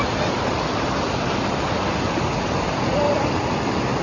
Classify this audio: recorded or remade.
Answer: recorded